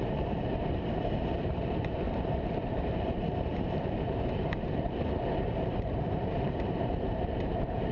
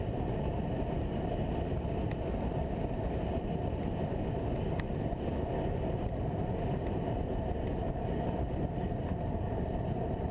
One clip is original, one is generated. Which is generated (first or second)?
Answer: first